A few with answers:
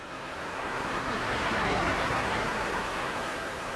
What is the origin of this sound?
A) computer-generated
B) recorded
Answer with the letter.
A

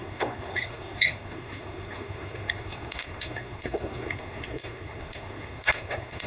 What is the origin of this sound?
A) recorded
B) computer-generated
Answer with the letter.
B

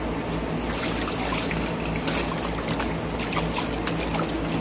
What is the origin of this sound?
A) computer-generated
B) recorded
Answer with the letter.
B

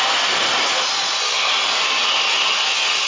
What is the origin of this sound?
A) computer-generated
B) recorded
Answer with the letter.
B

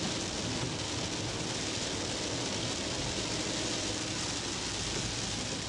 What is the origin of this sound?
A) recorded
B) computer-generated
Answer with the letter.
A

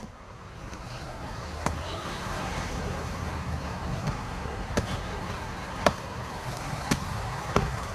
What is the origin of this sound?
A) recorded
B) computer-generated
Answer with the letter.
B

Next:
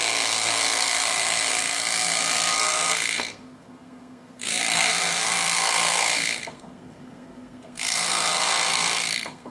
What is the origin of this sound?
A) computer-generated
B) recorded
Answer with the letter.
A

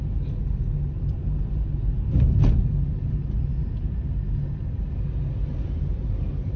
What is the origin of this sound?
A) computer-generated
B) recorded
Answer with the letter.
B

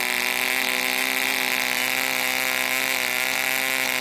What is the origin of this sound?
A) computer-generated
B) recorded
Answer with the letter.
B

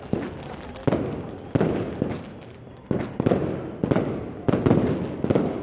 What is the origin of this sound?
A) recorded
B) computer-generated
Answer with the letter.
A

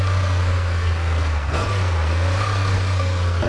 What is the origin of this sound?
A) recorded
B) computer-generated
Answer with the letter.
B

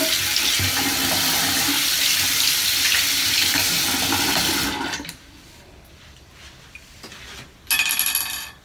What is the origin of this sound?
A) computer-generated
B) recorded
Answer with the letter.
B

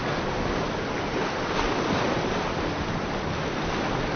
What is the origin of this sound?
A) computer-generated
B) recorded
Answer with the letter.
B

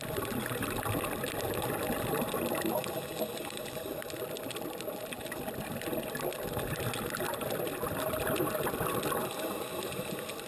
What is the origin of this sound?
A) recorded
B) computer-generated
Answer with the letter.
A